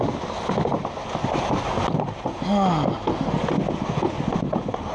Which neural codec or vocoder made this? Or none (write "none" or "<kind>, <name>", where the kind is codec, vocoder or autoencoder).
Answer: none